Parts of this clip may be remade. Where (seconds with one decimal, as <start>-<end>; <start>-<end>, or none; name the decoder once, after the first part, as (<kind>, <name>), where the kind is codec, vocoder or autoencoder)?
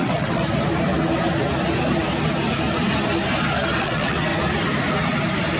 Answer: 0.0-0.4 (vocoder, WaveNeXt); 3.8-4.3